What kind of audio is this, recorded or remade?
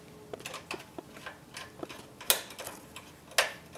recorded